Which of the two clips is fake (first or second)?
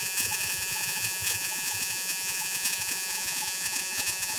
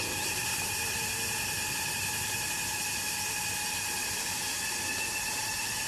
first